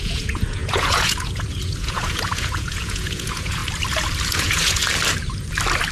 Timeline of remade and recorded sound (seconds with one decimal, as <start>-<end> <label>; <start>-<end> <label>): 0.0-3.6 remade; 3.6-4.3 recorded; 4.3-4.8 remade; 4.8-5.9 recorded